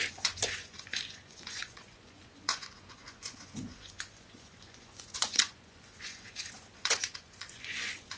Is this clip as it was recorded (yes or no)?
no